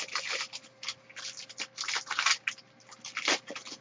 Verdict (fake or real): real